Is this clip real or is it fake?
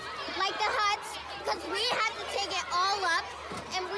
real